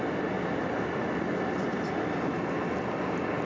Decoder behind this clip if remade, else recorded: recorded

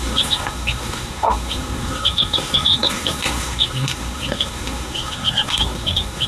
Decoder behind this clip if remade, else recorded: remade, codec, SNAC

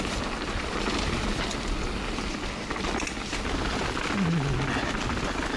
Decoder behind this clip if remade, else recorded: recorded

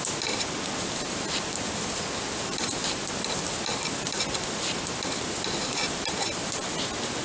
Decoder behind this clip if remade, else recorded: recorded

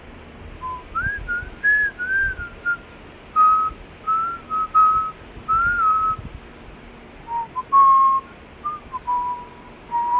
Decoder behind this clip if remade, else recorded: recorded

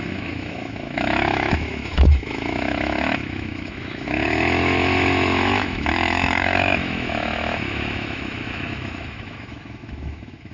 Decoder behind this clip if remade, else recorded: remade, autoencoder, DAC-VAE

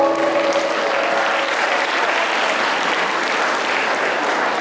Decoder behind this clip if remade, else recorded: recorded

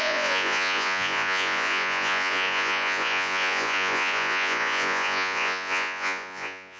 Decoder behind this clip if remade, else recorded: remade, vocoder, Vocos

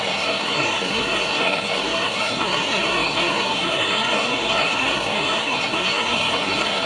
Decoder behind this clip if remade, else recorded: remade, codec, SNAC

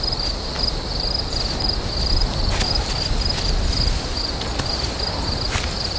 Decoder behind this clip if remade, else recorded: remade, vocoder, BigVGAN v2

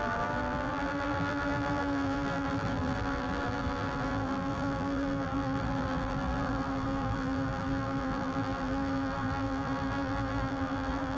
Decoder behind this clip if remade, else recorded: remade, vocoder, BigVGAN v2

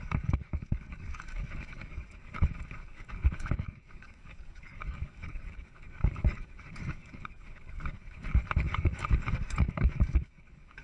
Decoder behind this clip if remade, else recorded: remade, codec, DAC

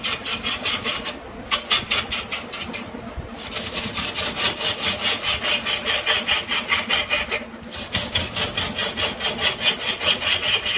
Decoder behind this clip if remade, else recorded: recorded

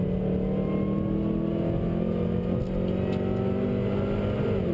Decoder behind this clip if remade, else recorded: recorded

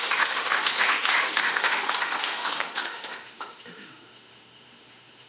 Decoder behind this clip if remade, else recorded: remade, autoencoder, DAC-VAE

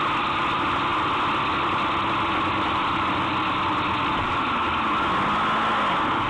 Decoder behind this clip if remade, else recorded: recorded